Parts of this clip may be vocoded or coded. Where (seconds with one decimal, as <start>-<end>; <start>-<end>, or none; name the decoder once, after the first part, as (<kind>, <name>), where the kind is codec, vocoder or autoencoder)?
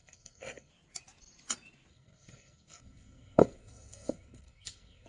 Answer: 0.0-0.7 (codec, SNAC); 1.9-5.1